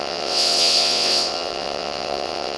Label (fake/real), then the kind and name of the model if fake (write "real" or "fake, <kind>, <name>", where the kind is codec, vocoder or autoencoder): fake, vocoder, WaveNeXt